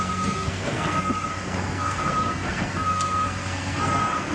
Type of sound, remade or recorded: remade